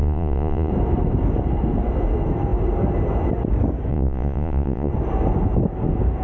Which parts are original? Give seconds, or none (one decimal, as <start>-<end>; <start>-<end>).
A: 0.7-3.9; 4.9-6.2

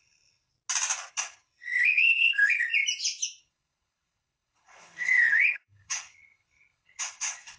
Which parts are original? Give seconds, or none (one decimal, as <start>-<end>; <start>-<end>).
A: 0.5-1.1; 2.7-3.4

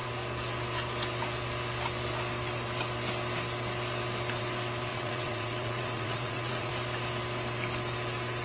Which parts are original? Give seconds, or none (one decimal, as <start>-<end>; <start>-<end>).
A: 0.0-4.9; 6.7-8.4

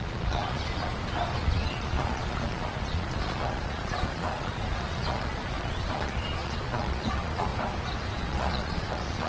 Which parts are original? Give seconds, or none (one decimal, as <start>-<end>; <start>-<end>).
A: 0.9-1.4; 7.5-8.2

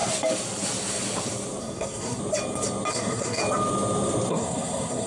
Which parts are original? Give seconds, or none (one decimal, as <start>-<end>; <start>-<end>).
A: 0.0-1.6; 2.2-2.9; 3.4-4.3

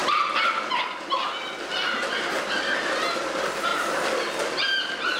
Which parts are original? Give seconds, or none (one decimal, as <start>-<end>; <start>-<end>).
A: 0.0-5.2

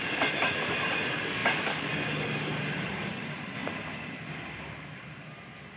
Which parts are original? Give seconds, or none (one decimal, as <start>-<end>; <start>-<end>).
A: 0.0-3.6; 5.3-5.8